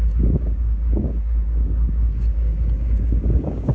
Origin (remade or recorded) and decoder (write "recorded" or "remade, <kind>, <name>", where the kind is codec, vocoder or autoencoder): remade, codec, DAC